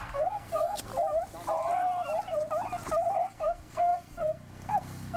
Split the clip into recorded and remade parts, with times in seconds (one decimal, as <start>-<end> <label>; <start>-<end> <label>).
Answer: 0.0-0.9 remade; 0.9-3.2 recorded; 3.2-5.2 remade